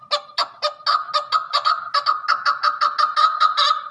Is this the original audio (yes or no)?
yes